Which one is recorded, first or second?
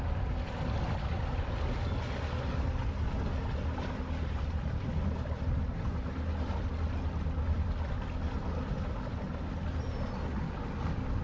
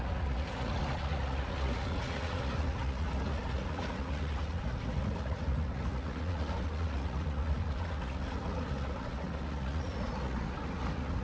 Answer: first